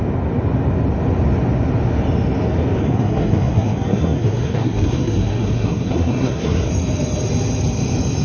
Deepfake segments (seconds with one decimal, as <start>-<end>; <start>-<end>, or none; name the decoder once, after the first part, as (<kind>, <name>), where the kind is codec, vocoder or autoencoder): 2.8-6.7 (codec, SNAC)